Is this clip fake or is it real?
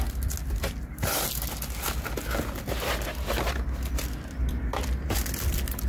real